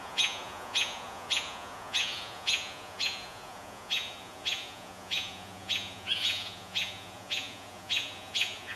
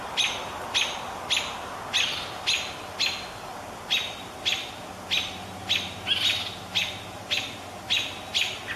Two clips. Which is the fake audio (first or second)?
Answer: first